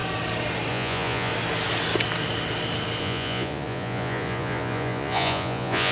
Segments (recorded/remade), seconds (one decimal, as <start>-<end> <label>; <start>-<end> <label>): 0.0-0.7 recorded; 0.7-1.3 remade; 1.3-3.0 recorded; 3.0-5.9 remade